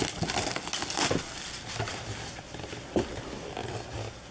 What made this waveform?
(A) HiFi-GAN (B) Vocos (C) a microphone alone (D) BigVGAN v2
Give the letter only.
C